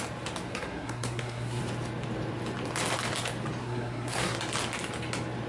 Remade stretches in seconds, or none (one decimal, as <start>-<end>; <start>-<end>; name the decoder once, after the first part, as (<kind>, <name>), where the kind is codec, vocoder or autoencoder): 0.5-1.6 (codec, SNAC); 3.6-4.4